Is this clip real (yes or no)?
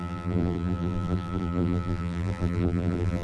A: no